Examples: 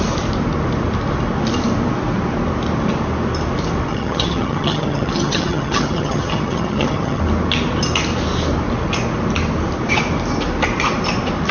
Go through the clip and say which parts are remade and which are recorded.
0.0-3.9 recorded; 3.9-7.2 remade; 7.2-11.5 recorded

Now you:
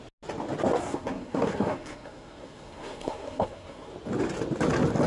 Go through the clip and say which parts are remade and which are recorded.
0.0-0.8 recorded; 0.8-3.9 remade; 3.9-5.1 recorded

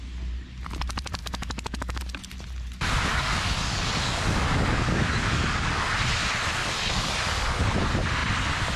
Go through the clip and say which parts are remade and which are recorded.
0.0-1.2 recorded; 1.2-2.0 remade; 2.0-3.1 recorded; 3.1-5.9 remade; 5.9-6.6 recorded; 6.6-7.6 remade; 7.6-8.8 recorded

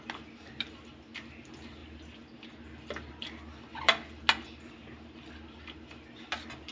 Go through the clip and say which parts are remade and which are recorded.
0.0-6.7 recorded

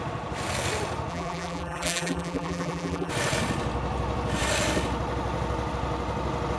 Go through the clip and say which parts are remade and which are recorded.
0.0-1.1 recorded; 1.1-3.1 remade; 3.1-6.6 recorded